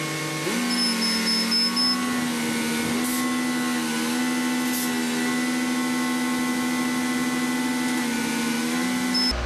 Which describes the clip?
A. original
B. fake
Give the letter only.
A